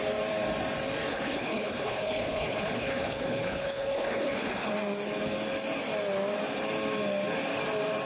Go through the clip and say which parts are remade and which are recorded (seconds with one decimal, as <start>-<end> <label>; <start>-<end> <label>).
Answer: 0.0-1.1 recorded; 1.1-4.7 remade; 4.7-8.1 recorded